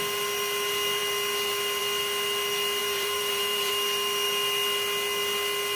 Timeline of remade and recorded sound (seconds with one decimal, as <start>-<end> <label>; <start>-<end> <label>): 0.0-2.8 recorded; 2.8-3.7 remade; 3.7-5.8 recorded